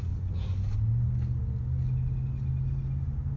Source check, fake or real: real